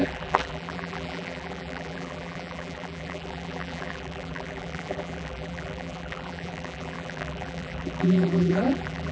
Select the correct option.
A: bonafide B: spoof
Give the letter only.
B